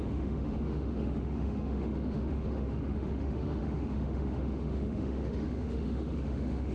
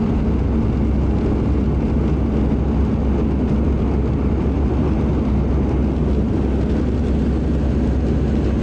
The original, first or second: second